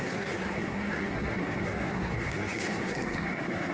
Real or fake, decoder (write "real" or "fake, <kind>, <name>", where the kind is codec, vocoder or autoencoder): fake, codec, SNAC